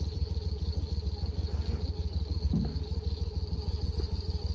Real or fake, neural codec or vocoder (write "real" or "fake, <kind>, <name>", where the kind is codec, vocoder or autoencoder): real